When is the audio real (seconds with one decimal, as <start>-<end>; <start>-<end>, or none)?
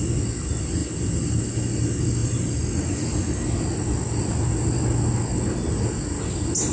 0.0-6.7